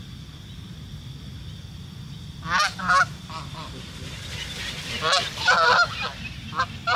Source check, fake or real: real